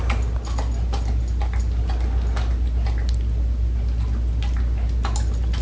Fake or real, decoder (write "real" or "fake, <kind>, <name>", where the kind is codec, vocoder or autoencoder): real